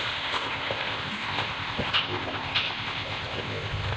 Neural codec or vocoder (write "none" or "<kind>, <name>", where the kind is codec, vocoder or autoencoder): codec, ZipCodec